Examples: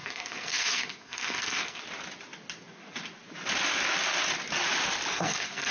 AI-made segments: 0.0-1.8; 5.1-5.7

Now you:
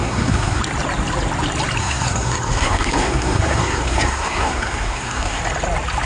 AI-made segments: 0.0-0.6; 1.8-5.4

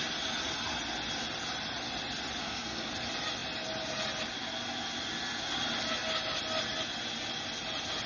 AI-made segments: 2.4-2.9